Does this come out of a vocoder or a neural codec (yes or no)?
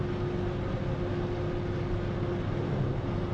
no